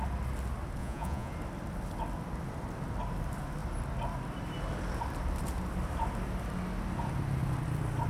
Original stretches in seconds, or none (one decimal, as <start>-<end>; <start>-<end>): 0.0-0.8; 1.3-8.1